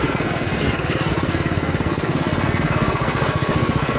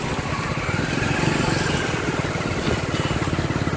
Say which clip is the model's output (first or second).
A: first